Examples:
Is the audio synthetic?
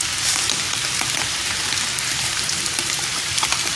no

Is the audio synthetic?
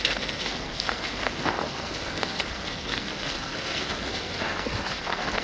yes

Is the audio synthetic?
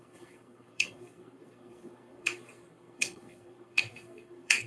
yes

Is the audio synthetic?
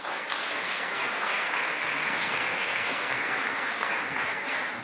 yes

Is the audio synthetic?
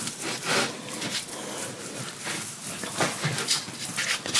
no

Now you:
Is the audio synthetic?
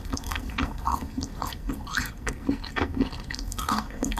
yes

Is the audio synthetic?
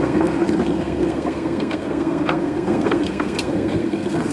yes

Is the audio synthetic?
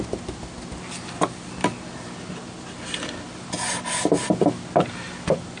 no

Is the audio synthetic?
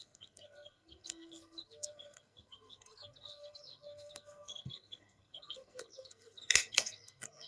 yes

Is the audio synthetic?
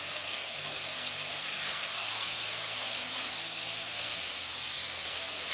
yes